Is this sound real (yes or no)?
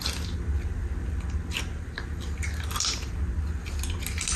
yes